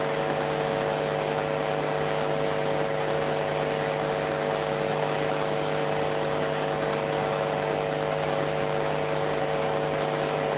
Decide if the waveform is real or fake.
real